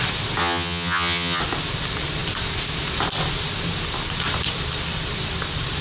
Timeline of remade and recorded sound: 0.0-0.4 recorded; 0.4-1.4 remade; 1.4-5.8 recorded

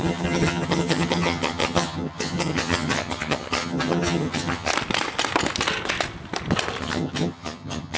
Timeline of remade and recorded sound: 0.0-4.7 remade; 4.7-6.8 recorded; 6.8-8.0 remade